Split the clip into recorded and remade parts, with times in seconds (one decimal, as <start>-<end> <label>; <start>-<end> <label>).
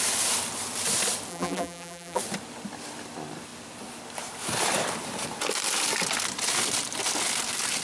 0.0-1.3 recorded; 1.3-2.2 remade; 2.2-7.8 recorded